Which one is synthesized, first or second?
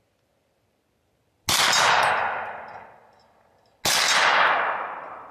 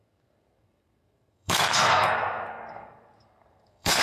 second